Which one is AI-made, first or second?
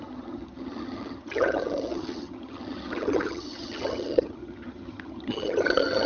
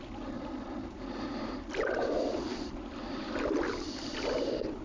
first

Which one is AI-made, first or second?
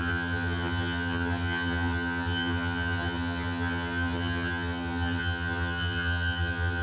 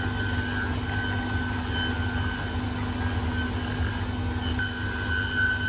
first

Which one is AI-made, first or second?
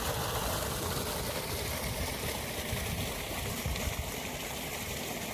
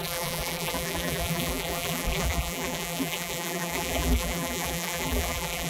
second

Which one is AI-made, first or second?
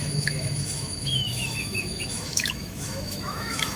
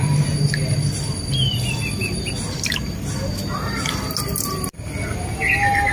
first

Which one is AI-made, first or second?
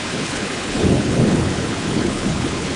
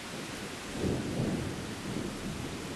first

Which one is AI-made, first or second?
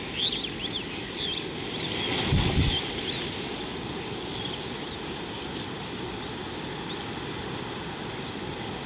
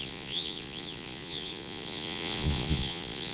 second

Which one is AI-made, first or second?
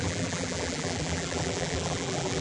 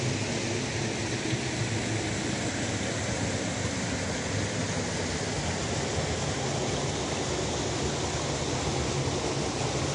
first